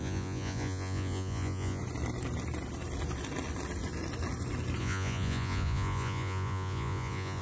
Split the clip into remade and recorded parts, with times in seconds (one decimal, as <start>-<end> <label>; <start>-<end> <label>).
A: 0.0-1.8 remade; 1.8-4.8 recorded; 4.8-7.4 remade